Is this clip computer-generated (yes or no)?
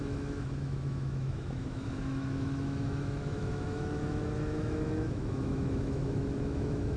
yes